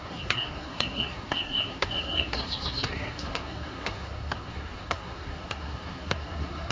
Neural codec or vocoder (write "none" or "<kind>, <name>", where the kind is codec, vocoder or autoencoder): codec, SNAC